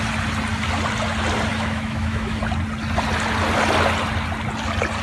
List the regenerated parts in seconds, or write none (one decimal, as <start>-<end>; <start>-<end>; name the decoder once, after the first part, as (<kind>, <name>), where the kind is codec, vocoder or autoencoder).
1.5-2.4 (autoencoder, DAC-VAE)